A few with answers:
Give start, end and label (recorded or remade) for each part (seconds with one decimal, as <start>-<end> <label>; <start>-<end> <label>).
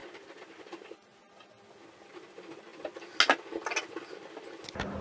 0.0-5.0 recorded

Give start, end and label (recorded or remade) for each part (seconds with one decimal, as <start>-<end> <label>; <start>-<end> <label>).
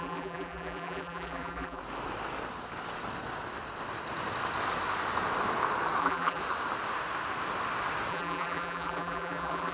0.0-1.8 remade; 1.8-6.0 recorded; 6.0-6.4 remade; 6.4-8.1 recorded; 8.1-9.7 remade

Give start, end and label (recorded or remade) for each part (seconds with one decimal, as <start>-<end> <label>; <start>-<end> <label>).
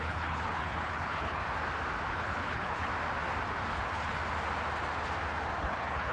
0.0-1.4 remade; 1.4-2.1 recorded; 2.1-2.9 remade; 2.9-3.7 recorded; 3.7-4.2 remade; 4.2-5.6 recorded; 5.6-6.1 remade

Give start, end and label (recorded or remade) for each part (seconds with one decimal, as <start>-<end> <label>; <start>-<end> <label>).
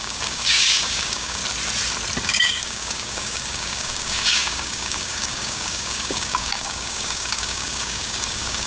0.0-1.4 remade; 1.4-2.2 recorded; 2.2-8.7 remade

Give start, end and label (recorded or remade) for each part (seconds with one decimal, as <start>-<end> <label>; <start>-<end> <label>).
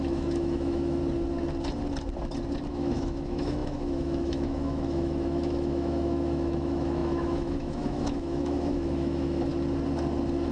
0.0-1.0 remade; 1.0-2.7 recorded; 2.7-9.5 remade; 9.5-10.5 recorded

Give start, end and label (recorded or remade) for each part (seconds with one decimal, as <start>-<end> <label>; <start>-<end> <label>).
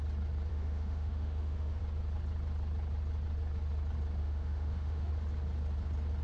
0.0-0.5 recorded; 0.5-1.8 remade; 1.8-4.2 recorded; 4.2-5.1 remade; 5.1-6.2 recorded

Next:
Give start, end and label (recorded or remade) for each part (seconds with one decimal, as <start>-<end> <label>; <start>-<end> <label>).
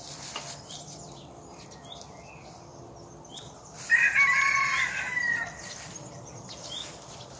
0.0-7.4 recorded